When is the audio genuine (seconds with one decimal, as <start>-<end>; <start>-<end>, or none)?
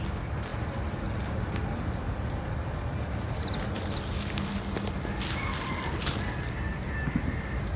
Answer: 0.0-6.7